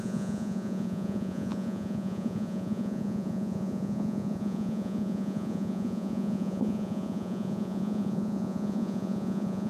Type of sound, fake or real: fake